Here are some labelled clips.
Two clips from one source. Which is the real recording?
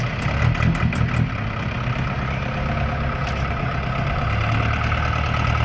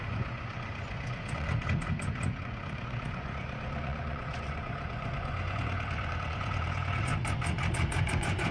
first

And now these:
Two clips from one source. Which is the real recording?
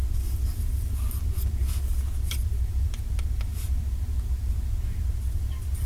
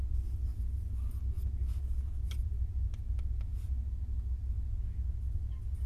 second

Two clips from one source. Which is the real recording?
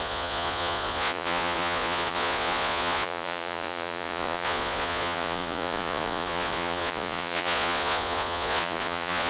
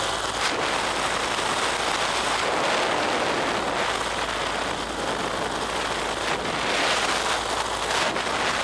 second